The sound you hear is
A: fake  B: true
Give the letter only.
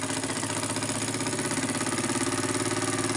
B